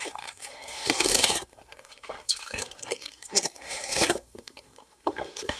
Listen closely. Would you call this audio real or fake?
fake